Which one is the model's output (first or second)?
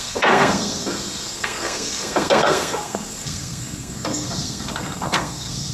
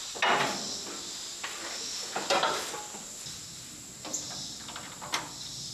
first